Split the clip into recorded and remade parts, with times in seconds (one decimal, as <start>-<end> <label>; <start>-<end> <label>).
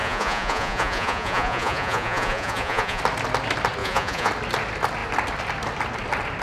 0.0-3.0 remade; 3.0-3.8 recorded; 3.8-4.3 remade; 4.3-6.4 recorded